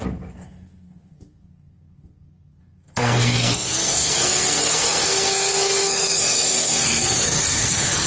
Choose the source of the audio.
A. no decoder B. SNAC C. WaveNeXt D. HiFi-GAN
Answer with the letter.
B